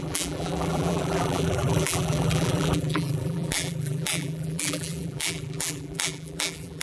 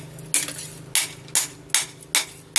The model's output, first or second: first